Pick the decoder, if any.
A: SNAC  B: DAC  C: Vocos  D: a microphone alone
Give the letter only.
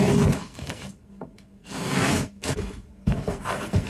A